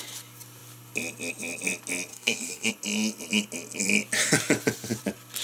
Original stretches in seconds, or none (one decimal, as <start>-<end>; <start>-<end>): 0.0-2.1; 2.7-5.4